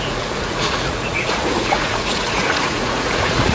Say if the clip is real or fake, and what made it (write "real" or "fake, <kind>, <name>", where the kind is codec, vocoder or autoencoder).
fake, vocoder, Vocos